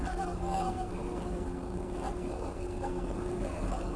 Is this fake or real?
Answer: fake